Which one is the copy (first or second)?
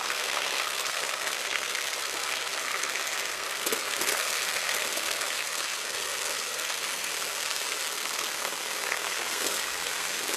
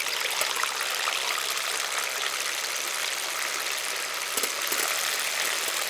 first